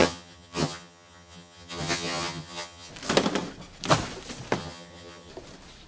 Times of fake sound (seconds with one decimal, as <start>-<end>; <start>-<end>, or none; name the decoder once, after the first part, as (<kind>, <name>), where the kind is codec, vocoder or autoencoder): 0.0-2.9 (vocoder, HiFi-GAN); 4.6-5.3